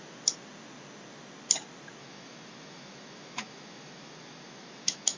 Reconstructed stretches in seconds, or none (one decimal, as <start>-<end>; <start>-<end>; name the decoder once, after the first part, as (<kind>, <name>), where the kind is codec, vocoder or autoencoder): 2.0-5.2 (autoencoder, DAC-VAE)